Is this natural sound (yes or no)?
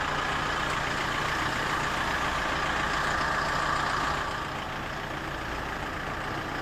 yes